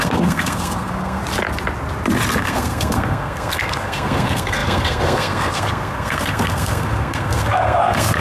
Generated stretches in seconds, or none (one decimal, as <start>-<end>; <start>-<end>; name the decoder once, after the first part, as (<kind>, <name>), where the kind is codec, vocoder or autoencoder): 0.0-1.2 (codec, SNAC); 2.4-8.2